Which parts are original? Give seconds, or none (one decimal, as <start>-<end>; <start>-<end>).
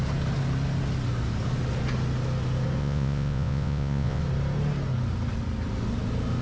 0.0-2.8; 4.2-6.4